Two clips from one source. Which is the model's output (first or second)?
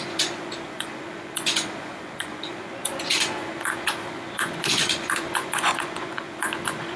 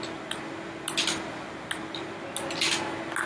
first